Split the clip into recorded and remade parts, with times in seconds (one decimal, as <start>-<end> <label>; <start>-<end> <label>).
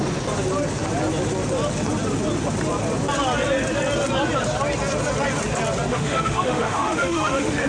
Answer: 0.0-5.9 recorded; 5.9-7.7 remade